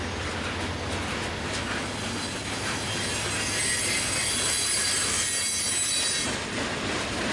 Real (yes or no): yes